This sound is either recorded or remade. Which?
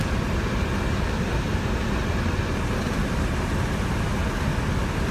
recorded